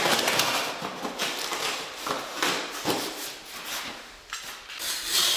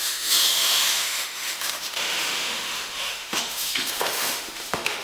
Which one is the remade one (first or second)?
second